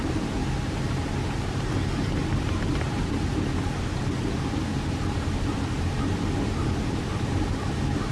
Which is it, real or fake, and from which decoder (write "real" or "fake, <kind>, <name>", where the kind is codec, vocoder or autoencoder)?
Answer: real